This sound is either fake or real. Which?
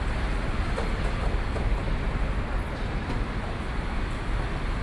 real